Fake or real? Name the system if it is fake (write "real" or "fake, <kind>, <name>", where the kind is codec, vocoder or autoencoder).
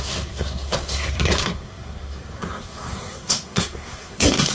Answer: fake, codec, SNAC